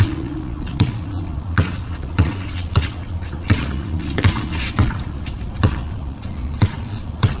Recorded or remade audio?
remade